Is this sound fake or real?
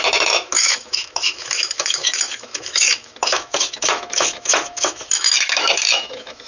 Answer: fake